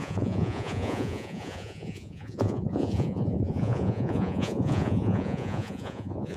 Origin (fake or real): fake